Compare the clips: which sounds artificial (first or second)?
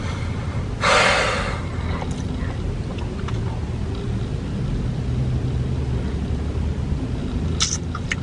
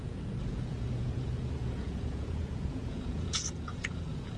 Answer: second